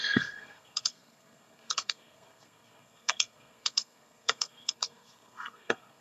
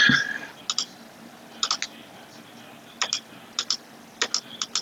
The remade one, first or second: first